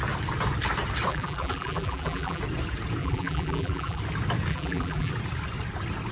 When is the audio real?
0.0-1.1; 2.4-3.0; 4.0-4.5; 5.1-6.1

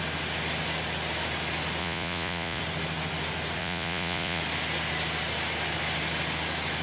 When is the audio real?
0.0-1.8; 2.6-3.6; 4.4-6.8

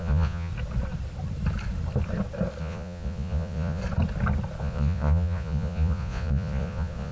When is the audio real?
0.5-2.6; 3.8-4.6

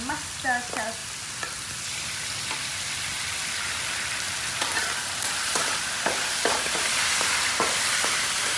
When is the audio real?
0.0-8.6

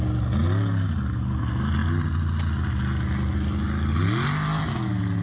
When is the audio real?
0.0-5.2

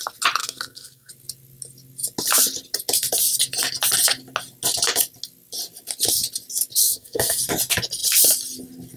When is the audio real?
0.0-0.4; 1.1-6.8; 7.4-9.0

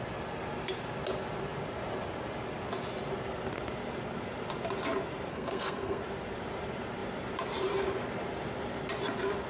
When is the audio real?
0.0-5.3; 6.0-9.5